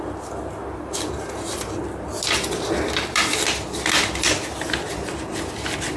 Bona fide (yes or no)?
yes